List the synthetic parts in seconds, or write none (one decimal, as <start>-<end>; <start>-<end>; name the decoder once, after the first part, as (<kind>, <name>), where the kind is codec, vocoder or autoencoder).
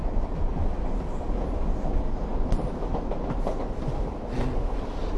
none